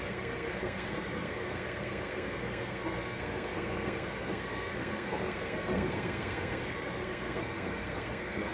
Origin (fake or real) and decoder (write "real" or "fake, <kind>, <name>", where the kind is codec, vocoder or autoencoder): fake, codec, SNAC